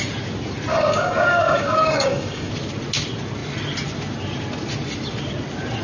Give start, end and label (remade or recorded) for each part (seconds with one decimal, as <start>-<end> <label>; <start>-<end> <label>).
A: 0.0-0.7 recorded; 0.7-2.5 remade; 2.5-5.8 recorded

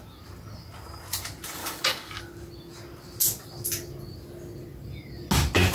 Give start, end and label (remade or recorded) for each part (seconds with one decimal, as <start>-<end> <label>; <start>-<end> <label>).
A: 0.0-1.6 recorded; 1.6-2.2 remade; 2.2-5.7 recorded

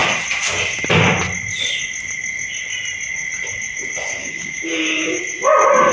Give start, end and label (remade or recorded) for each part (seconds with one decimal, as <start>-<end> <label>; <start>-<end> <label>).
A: 0.0-4.2 recorded; 4.2-5.2 remade; 5.2-5.9 recorded

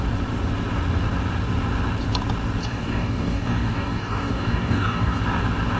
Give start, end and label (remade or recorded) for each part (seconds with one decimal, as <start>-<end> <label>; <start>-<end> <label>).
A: 0.0-2.6 recorded; 2.6-5.2 remade; 5.2-5.8 recorded

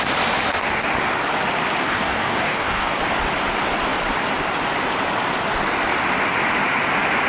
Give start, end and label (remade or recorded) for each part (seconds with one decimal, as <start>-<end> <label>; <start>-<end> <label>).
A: 0.0-1.8 recorded; 1.8-3.0 remade; 3.0-7.3 recorded

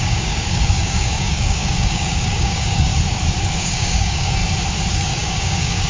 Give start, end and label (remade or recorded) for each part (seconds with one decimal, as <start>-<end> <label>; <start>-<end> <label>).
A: 0.0-2.9 remade; 2.9-3.6 recorded; 3.6-4.4 remade; 4.4-4.9 recorded; 4.9-5.9 remade

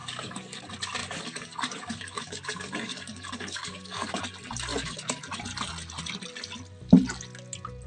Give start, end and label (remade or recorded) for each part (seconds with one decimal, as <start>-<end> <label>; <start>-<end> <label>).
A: 0.0-0.6 remade; 0.6-1.0 recorded; 1.0-4.2 remade; 4.2-4.7 recorded; 4.7-5.2 remade; 5.2-7.9 recorded

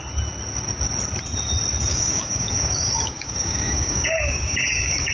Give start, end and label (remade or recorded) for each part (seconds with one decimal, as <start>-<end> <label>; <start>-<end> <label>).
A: 0.0-1.9 recorded; 1.9-5.1 remade